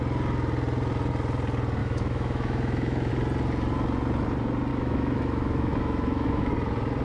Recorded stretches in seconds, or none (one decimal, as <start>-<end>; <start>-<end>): 0.0-1.8; 3.1-4.7; 6.5-7.0